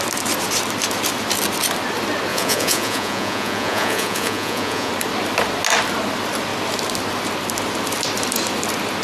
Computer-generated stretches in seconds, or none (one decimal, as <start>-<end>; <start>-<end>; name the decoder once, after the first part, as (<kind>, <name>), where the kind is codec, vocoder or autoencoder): 2.3-4.9 (vocoder, Vocos)